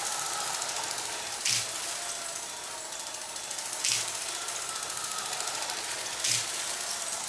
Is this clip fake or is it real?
real